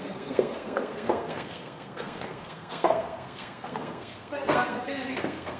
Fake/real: fake